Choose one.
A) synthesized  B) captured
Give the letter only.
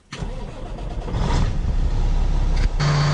B